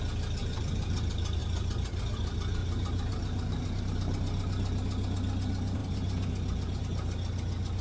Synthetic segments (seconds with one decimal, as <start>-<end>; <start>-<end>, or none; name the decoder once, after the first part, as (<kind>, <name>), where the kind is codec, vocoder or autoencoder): 0.4-1.0 (vocoder, BigVGAN v2); 2.6-3.8